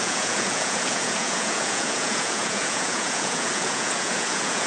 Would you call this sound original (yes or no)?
no